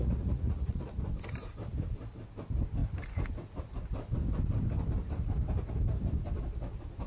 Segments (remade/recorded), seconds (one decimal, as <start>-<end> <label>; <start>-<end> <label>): 0.0-1.0 remade; 1.0-7.1 recorded